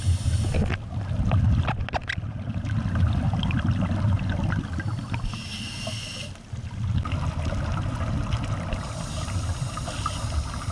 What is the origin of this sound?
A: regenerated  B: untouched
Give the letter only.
B